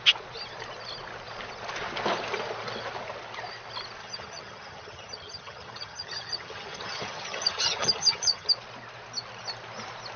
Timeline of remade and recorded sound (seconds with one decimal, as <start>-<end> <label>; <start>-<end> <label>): 0.0-4.0 recorded; 4.0-8.5 remade; 8.5-10.2 recorded

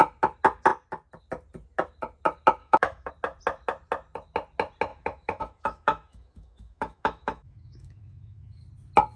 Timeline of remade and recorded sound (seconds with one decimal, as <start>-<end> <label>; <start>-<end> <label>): 0.0-2.6 recorded; 2.6-3.1 remade; 3.1-4.9 recorded; 4.9-8.6 remade; 8.6-9.2 recorded

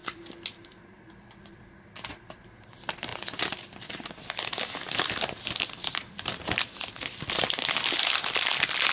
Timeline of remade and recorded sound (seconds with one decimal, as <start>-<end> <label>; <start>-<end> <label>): 0.0-8.9 remade

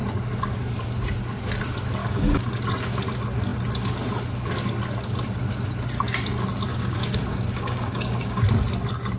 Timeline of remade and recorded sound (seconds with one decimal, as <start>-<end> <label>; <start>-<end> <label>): 0.0-2.0 recorded; 2.0-2.6 remade; 2.6-6.7 recorded; 6.7-8.4 remade; 8.4-9.2 recorded

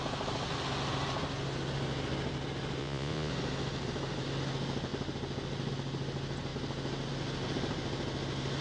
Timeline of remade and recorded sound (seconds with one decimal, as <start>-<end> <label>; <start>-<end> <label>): 0.0-2.8 recorded; 2.8-3.3 remade; 3.3-8.6 recorded

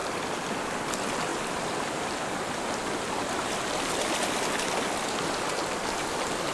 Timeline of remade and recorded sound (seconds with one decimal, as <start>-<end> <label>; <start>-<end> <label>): 0.0-0.7 remade; 0.7-6.5 recorded